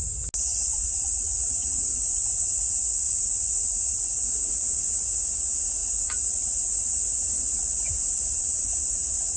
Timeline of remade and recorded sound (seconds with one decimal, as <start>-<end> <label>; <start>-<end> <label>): 0.0-0.7 recorded; 0.7-2.0 remade; 2.0-5.8 recorded; 5.8-9.4 remade